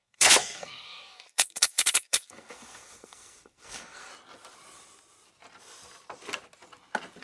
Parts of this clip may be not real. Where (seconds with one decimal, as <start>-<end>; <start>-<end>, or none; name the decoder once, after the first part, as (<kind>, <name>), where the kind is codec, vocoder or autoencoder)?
0.0-4.1 (codec, SNAC)